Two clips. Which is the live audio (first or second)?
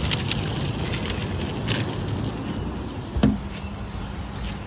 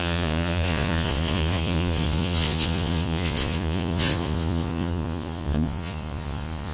first